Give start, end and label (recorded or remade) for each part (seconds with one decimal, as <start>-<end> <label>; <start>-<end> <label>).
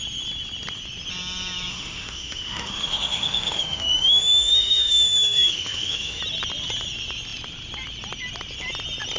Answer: 0.0-1.7 recorded; 1.7-6.2 remade; 6.2-9.2 recorded